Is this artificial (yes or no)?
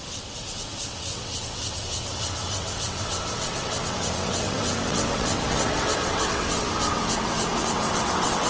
yes